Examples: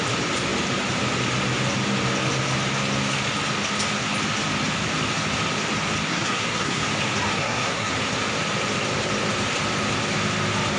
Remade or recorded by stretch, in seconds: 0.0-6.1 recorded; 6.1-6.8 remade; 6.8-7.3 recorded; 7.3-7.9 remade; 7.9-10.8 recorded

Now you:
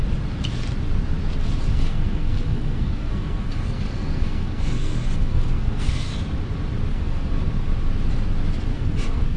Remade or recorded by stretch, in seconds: 0.0-1.7 recorded; 1.7-6.1 remade; 6.1-6.9 recorded; 6.9-7.5 remade; 7.5-8.7 recorded; 8.7-9.4 remade

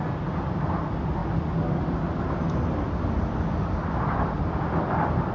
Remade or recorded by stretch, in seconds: 0.0-5.3 recorded

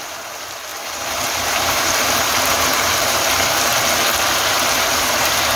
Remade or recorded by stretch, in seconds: 0.0-3.7 remade; 3.7-4.3 recorded; 4.3-5.6 remade

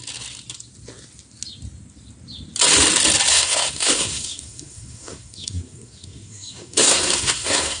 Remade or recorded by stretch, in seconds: 0.0-3.3 recorded; 3.3-7.8 remade

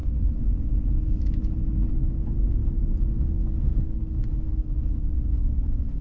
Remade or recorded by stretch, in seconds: 0.0-6.0 recorded

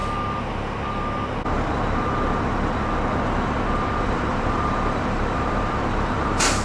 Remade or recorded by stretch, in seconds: 0.0-4.0 recorded; 4.0-6.6 remade

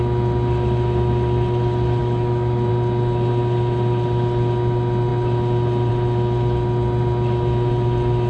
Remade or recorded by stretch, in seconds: 0.0-2.0 recorded; 2.0-2.7 remade; 2.7-8.3 recorded